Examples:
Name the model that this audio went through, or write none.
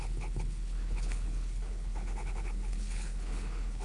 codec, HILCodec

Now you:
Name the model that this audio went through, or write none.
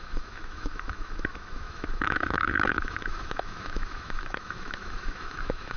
autoencoder, DAC-VAE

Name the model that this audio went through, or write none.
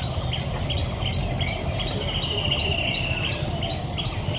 none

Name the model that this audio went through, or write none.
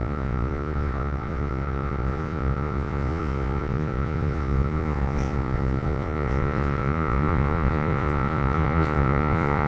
vocoder, Vocos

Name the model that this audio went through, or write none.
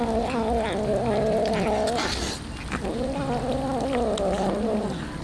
none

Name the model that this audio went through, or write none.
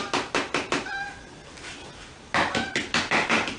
none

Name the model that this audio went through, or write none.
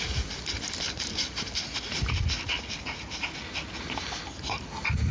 none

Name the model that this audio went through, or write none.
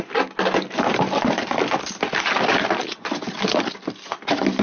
none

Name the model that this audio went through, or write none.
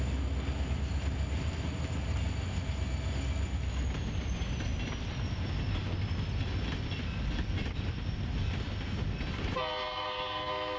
none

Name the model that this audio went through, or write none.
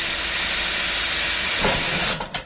none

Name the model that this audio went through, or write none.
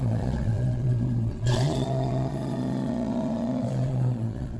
vocoder, Vocos